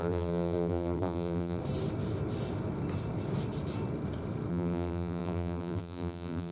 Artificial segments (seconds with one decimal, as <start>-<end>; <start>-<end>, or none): 0.0-1.6; 4.5-6.5